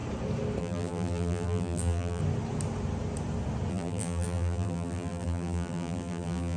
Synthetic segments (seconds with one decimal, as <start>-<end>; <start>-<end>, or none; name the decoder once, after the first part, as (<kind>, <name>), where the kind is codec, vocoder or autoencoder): 0.6-2.2 (vocoder, BigVGAN v2); 3.7-6.6